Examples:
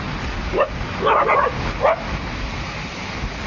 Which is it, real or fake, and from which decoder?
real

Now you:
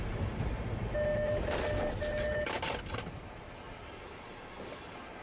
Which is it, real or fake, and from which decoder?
real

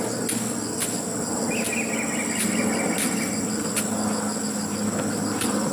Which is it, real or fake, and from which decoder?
real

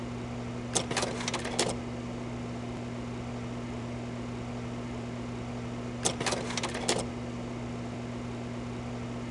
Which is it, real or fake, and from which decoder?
real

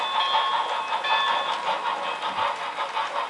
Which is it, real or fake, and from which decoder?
real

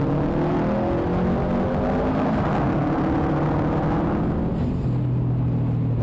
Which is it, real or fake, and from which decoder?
real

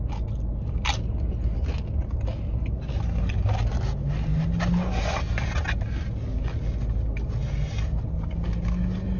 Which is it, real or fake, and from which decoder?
real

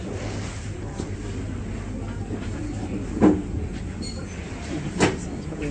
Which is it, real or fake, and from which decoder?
real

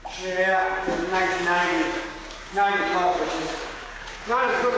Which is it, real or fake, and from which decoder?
fake, codec, DAC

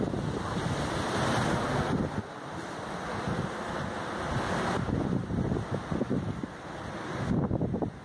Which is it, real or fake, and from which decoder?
real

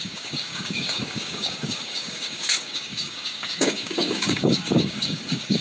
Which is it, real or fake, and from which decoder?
fake, codec, DAC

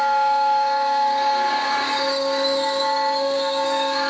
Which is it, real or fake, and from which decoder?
fake, codec, DAC